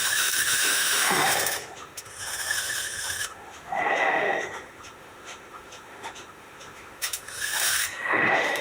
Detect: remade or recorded remade